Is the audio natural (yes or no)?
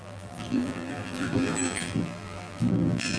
no